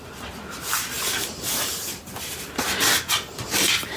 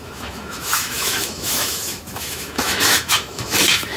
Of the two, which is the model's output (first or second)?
second